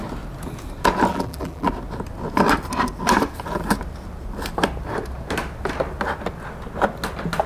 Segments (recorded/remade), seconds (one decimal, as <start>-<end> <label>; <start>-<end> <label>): 0.0-1.1 recorded; 1.1-1.7 remade; 1.7-7.5 recorded